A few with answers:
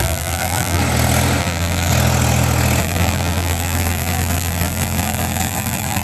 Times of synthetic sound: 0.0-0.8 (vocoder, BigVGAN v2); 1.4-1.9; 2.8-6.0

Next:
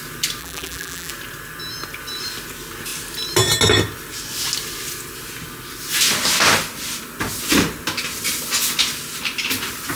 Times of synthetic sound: 0.4-1.1 (vocoder, BigVGAN v2)

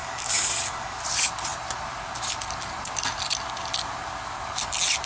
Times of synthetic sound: 0.0-1.0 (codec, DAC)

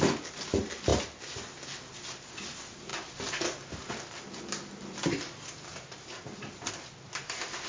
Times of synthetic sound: none

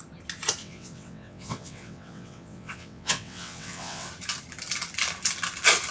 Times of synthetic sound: 0.6-4.1 (vocoder, WaveNeXt)

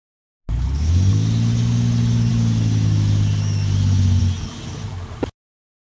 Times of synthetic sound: none

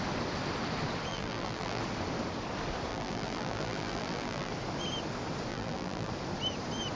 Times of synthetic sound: 1.1-1.8 (vocoder, BigVGAN v2); 2.9-4.5; 5.5-6.1

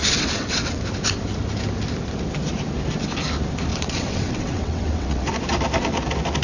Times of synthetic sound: 0.0-0.8 (vocoder, WaveNeXt); 3.7-5.3